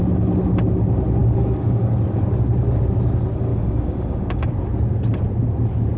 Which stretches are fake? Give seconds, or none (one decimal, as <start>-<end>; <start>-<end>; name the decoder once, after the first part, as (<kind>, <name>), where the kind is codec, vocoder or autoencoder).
1.2-1.8 (codec, DAC); 3.5-4.5